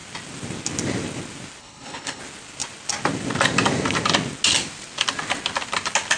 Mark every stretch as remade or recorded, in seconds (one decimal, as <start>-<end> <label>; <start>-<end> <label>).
0.0-1.6 recorded; 1.6-2.2 remade; 2.2-6.2 recorded